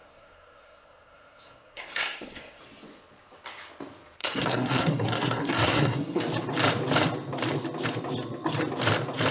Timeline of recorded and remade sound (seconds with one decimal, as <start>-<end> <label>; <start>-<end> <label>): 0.0-2.6 remade; 2.6-4.2 recorded; 4.2-6.2 remade; 6.2-9.3 recorded